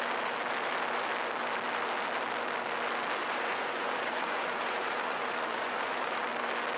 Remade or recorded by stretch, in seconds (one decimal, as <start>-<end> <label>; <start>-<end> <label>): 0.0-3.2 recorded; 3.2-6.3 remade; 6.3-6.8 recorded